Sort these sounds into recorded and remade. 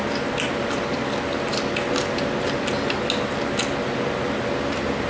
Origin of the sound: recorded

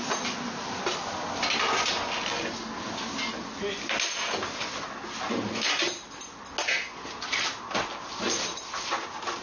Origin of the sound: recorded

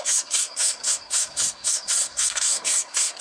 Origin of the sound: remade